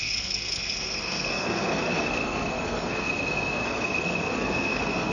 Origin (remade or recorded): remade